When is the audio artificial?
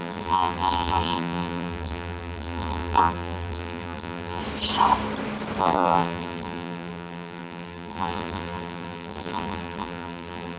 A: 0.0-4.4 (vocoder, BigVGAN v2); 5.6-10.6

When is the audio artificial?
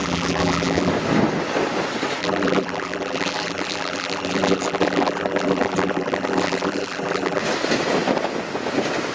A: 0.0-0.9 (vocoder, BigVGAN v2); 2.2-7.4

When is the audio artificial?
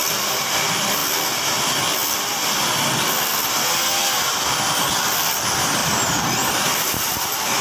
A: 5.8-7.6 (vocoder, BigVGAN v2)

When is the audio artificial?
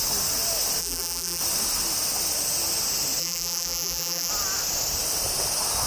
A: 0.8-1.4 (vocoder, BigVGAN v2); 3.2-4.3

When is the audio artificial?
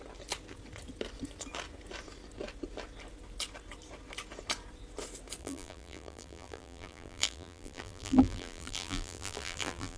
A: 5.4-10.0 (vocoder, BigVGAN v2)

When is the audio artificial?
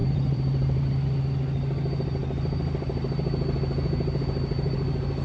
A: 0.0-1.2 (vocoder, BigVGAN v2)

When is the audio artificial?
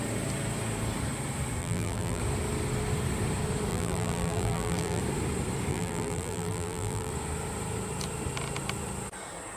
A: 1.6-2.2 (vocoder, BigVGAN v2); 3.7-5.0; 5.7-7.1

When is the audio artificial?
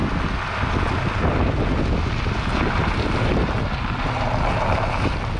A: none